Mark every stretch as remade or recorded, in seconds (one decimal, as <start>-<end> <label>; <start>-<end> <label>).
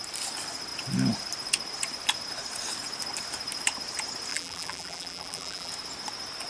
0.0-4.3 recorded; 4.3-5.7 remade; 5.7-6.5 recorded